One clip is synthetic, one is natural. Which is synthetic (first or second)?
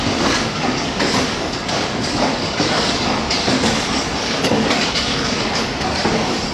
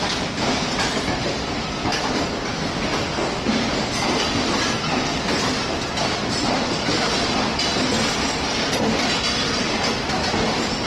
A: first